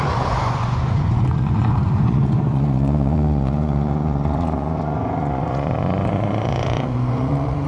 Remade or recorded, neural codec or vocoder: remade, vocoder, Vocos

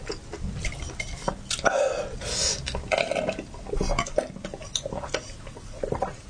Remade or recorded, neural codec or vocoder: recorded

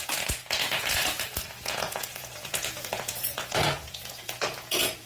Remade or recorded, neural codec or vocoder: remade, vocoder, Vocos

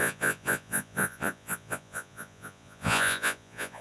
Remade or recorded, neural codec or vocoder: remade, vocoder, Vocos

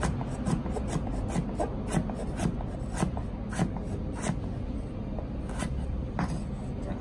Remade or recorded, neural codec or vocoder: recorded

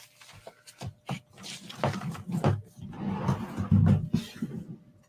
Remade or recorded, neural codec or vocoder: recorded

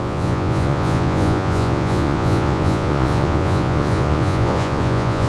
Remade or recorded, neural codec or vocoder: remade, vocoder, Vocos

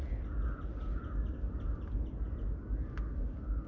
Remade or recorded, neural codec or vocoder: recorded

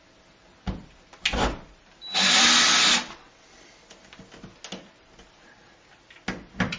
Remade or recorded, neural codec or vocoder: recorded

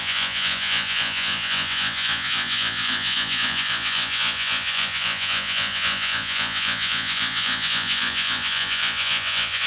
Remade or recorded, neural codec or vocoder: remade, vocoder, Vocos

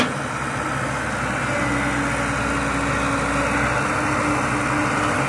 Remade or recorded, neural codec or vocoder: recorded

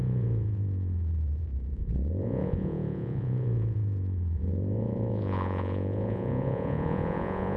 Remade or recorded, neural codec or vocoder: remade, vocoder, Vocos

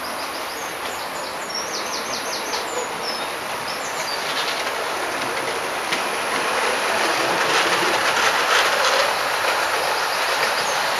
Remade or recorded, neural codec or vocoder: recorded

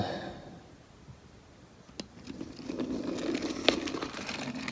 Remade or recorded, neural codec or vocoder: recorded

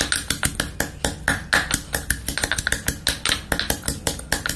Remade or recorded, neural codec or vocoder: recorded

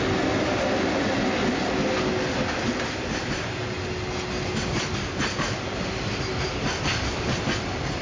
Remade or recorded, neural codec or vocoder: recorded